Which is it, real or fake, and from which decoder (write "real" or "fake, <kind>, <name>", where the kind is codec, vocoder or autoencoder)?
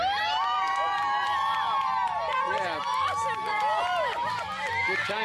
real